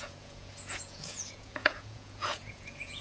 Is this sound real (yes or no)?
no